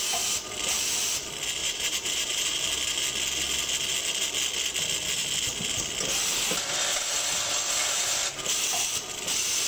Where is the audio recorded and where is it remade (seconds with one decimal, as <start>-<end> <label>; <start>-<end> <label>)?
0.0-1.6 recorded; 1.6-2.6 remade; 2.6-9.7 recorded